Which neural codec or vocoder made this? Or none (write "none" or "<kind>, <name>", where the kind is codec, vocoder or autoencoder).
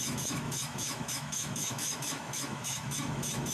autoencoder, DAC-VAE